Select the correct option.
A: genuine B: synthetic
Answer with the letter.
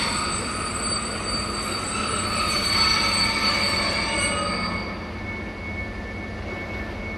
A